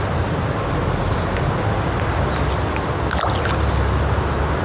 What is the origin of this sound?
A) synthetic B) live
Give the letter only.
B